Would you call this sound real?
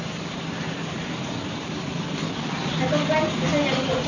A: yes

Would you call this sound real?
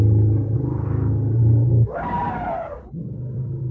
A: yes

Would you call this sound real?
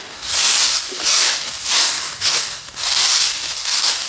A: no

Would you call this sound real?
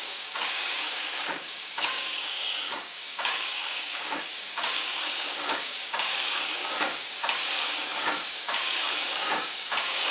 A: no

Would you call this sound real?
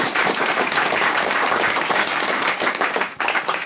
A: no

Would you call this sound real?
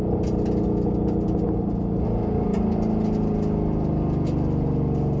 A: yes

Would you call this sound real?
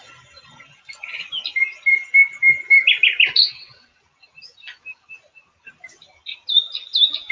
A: yes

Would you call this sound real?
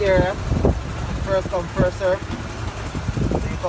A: yes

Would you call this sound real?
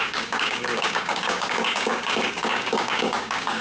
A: no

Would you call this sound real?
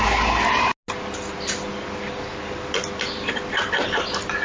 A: yes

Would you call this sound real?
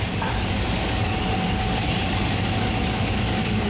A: no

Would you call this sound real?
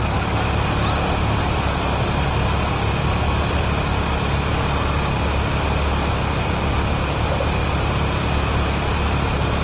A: yes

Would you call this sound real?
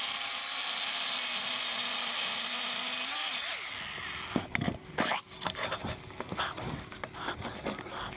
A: yes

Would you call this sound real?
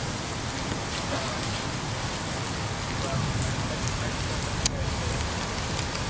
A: yes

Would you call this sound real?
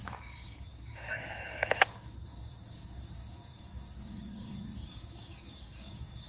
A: no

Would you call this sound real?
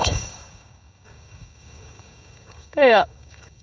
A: no